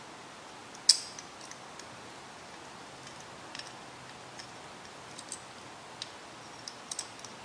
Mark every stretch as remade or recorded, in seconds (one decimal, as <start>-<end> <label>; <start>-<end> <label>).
0.0-7.4 recorded